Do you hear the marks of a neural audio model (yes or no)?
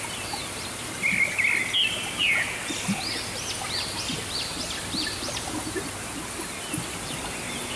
no